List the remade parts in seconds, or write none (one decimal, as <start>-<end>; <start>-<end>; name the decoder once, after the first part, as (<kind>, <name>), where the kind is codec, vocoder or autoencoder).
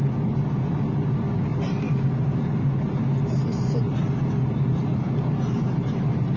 none